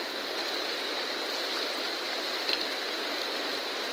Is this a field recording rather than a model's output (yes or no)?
yes